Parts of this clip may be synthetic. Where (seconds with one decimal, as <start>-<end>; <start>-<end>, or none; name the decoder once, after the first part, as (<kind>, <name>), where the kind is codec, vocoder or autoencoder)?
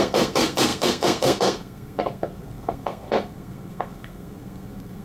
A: 0.0-5.0 (codec, SNAC)